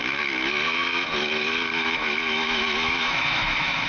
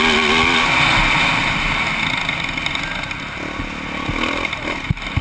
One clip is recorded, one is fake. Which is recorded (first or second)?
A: second